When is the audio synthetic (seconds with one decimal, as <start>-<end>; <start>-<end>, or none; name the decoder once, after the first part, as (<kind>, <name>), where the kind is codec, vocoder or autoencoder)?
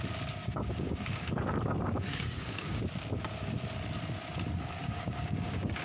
0.4-2.8 (codec, DAC); 4.8-5.8